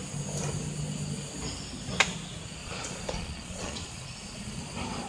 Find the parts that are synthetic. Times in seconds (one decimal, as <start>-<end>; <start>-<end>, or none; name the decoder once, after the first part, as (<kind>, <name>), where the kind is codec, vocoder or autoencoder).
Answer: 2.6-4.6 (vocoder, Vocos)